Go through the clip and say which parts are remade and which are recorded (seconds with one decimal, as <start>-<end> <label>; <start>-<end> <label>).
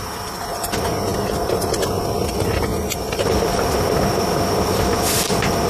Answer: 0.0-5.7 recorded